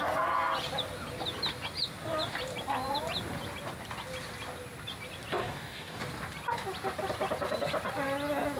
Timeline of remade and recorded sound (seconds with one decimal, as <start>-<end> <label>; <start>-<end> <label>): 0.0-5.4 recorded; 5.4-6.0 remade; 6.0-8.6 recorded